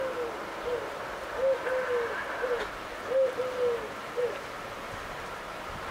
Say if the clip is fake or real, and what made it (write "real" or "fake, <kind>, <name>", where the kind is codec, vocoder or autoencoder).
real